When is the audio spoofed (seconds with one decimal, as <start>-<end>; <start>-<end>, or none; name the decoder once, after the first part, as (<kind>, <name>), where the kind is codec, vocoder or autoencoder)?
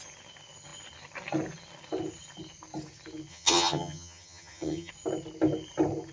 3.3-4.9 (vocoder, HiFi-GAN)